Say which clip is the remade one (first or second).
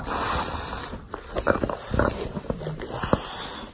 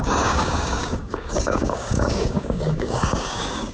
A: second